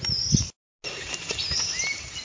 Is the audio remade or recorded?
recorded